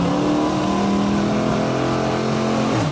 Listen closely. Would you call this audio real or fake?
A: real